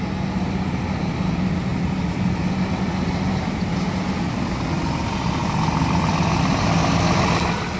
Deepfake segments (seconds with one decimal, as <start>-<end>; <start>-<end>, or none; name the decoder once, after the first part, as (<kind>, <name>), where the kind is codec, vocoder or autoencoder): none